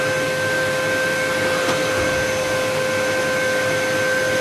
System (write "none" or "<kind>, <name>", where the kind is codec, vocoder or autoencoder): none